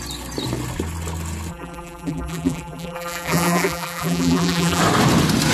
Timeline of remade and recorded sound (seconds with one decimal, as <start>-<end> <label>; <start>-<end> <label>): 0.0-1.5 recorded; 1.5-4.8 remade; 4.8-5.5 recorded

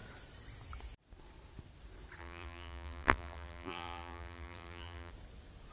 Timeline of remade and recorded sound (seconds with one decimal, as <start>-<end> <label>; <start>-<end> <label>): 0.0-2.2 recorded; 2.2-5.1 remade; 5.1-5.7 recorded

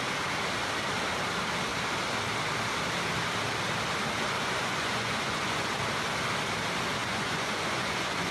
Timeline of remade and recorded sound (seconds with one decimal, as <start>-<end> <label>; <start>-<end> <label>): 0.0-4.4 recorded; 4.4-5.7 remade; 5.7-7.0 recorded; 7.0-8.3 remade

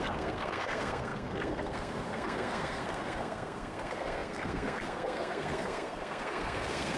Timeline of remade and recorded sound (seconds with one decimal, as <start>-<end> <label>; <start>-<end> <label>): 0.0-7.0 remade

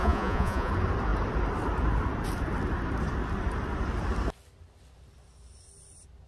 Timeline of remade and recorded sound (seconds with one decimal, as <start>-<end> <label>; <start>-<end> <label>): 0.0-0.7 remade; 0.7-6.3 recorded

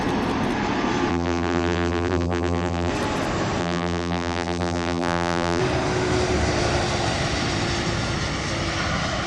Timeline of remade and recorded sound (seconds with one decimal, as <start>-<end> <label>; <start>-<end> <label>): 0.0-1.1 recorded; 1.1-2.9 remade; 2.9-3.6 recorded; 3.6-5.6 remade; 5.6-9.3 recorded

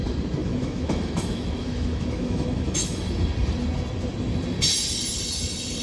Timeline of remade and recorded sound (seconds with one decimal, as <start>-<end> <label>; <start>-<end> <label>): 0.0-0.4 recorded; 0.4-3.0 remade; 3.0-5.8 recorded